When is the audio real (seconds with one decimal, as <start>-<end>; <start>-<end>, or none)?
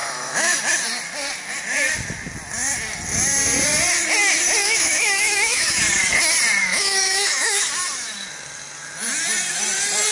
0.6-4.6; 5.8-6.6; 7.7-10.1